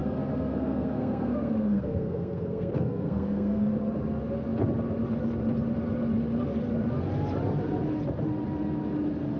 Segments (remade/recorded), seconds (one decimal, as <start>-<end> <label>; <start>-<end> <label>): 0.0-3.7 remade; 3.7-9.4 recorded